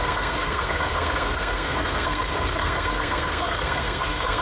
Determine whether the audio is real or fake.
fake